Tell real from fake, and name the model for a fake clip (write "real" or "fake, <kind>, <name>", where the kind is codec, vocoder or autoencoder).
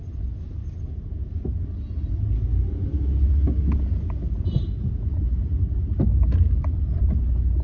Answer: real